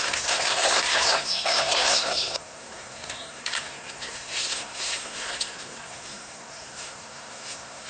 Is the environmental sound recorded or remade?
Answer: remade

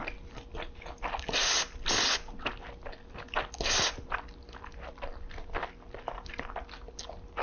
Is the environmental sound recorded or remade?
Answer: recorded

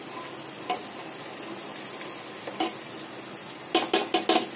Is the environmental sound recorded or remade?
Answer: recorded